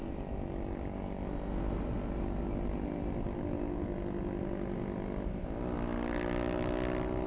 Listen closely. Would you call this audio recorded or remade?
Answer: recorded